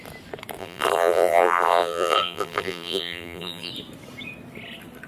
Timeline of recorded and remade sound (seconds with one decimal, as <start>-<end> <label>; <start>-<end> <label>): 0.0-0.6 recorded; 0.6-3.7 remade; 3.7-5.1 recorded